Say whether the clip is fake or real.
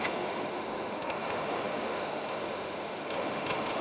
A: fake